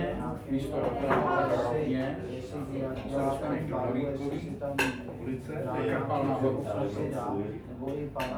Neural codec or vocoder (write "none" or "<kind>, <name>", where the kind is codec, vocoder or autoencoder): none